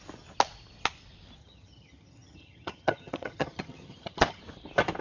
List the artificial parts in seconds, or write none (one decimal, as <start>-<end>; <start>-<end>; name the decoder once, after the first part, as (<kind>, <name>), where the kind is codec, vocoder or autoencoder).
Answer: 1.4-4.4 (vocoder, HiFi-GAN)